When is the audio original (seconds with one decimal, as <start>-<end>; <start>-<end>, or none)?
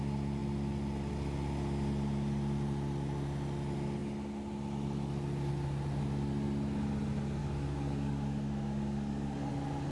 0.0-7.4; 9.5-9.9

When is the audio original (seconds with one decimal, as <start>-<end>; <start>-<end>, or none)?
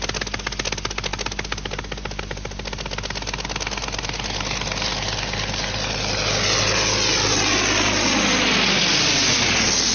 0.0-9.9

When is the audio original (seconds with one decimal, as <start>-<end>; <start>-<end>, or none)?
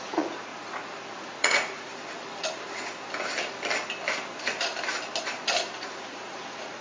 0.5-1.2; 1.9-6.0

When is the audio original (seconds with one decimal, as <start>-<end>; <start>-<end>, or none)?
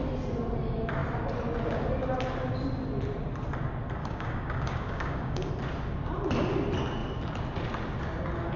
0.0-4.0; 5.5-8.6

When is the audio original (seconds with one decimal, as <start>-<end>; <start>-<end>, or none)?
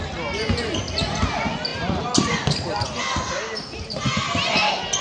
0.0-5.0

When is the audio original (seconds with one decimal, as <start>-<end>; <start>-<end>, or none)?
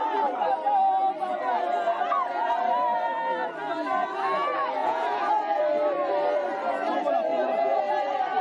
0.0-4.8; 5.3-7.3; 7.8-8.4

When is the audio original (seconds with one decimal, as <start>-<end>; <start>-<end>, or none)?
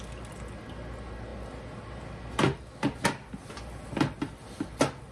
0.0-5.1